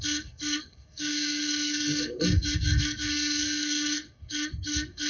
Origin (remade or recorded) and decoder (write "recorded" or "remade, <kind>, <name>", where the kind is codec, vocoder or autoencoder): remade, codec, SNAC